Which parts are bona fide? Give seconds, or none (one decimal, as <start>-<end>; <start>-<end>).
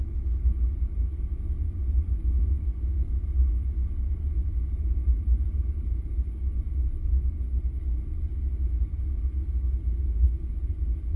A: 0.0-11.2